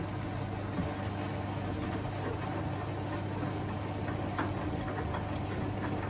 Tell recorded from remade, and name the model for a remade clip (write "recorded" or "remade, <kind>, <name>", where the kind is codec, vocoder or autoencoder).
recorded